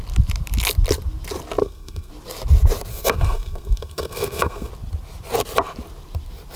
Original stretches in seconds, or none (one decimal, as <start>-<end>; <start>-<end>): 0.0-1.6; 2.1-2.9; 4.7-6.6